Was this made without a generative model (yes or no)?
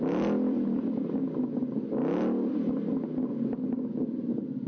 yes